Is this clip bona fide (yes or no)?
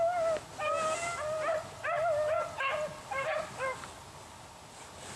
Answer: yes